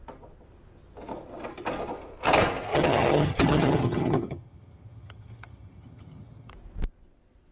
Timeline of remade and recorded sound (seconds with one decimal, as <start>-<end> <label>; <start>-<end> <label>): 0.0-2.7 recorded; 2.7-6.5 remade; 6.5-7.5 recorded